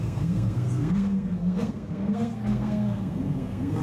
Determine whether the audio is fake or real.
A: fake